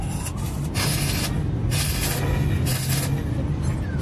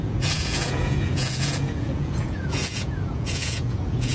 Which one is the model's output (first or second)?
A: second